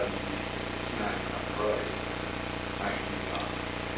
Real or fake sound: real